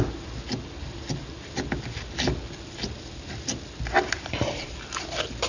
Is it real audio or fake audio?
real